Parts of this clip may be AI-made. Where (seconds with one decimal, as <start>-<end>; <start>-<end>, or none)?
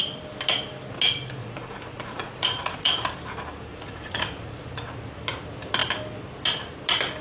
1.4-2.9; 3.7-4.9